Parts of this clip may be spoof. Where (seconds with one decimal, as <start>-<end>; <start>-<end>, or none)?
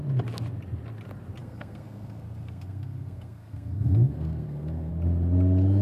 1.4-4.9